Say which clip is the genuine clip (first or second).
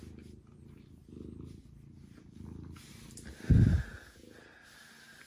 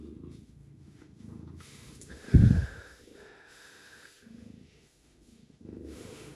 first